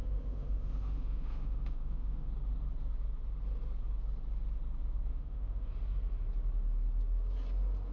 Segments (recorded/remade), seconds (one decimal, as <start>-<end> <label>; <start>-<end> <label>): 0.0-2.3 remade; 2.3-5.1 recorded; 5.1-5.7 remade; 5.7-7.9 recorded